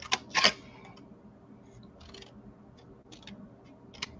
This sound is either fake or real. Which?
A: real